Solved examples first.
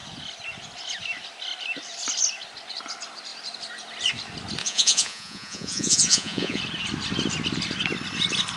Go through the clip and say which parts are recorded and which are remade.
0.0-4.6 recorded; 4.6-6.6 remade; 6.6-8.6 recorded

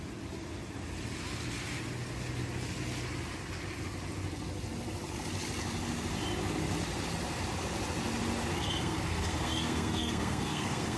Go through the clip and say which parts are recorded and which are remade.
0.0-8.5 recorded; 8.5-11.0 remade

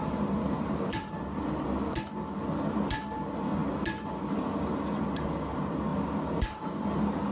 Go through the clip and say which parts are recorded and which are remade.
0.0-1.2 remade; 1.2-5.9 recorded; 5.9-7.3 remade

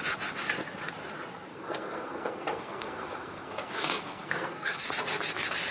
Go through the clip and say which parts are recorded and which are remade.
0.0-1.5 recorded; 1.5-4.9 remade; 4.9-5.7 recorded

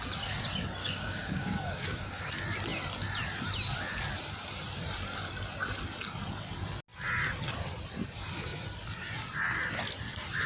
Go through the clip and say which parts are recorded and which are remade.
0.0-0.8 recorded; 0.8-2.3 remade; 2.3-10.5 recorded

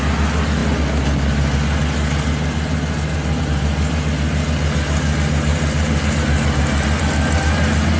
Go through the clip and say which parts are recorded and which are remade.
0.0-5.5 recorded; 5.5-6.1 remade; 6.1-8.0 recorded

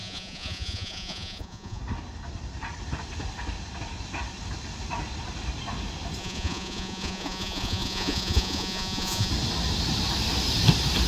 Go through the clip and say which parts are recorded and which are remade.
0.0-1.8 remade; 1.8-6.2 recorded; 6.2-9.3 remade; 9.3-11.1 recorded